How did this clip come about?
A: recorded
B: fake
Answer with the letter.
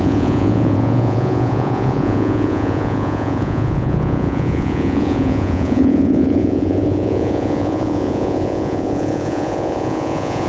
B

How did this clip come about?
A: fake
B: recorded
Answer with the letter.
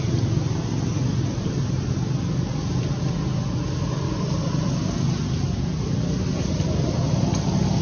B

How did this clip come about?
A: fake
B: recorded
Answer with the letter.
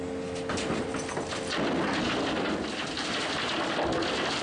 B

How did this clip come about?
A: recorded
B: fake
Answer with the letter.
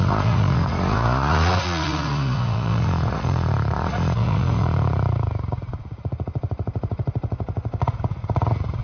B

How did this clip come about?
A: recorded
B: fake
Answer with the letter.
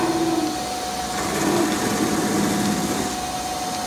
A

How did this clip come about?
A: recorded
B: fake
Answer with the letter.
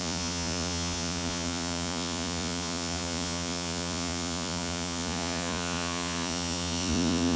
B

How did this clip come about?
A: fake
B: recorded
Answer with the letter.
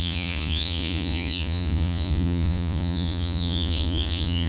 A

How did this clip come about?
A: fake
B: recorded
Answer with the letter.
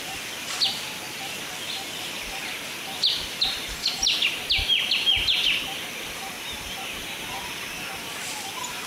B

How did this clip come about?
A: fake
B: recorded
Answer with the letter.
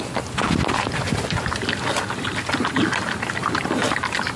B